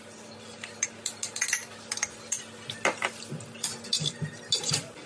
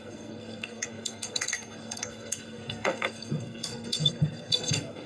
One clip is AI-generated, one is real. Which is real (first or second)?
first